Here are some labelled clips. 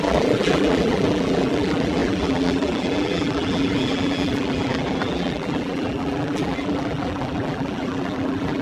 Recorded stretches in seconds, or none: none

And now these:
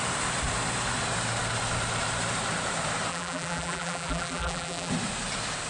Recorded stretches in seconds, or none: 0.0-3.1; 4.9-5.7

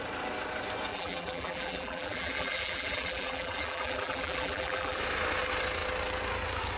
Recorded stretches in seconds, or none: 0.0-0.9; 5.0-6.8